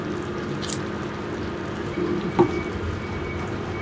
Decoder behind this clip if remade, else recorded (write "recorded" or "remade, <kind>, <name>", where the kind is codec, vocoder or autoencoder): recorded